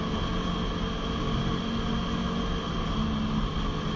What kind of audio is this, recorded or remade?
recorded